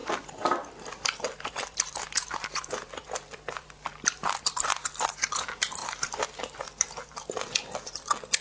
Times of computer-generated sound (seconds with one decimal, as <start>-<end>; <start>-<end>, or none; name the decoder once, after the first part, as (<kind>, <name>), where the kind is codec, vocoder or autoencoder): 0.0-8.4 (vocoder, BigVGAN v2)